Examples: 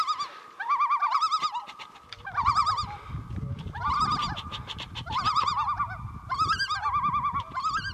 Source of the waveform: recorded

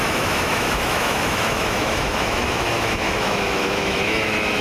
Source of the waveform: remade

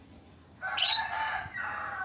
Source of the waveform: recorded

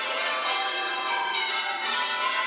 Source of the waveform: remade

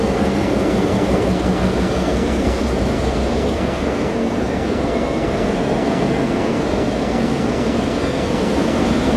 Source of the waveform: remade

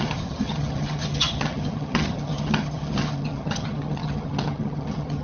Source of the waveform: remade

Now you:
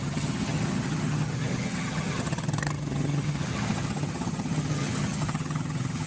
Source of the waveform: remade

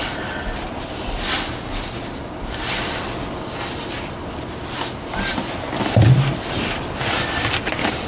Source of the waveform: recorded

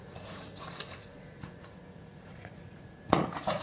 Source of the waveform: remade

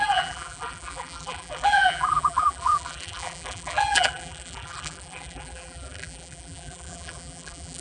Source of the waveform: remade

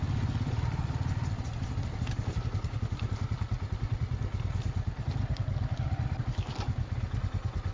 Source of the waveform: recorded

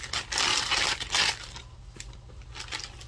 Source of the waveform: recorded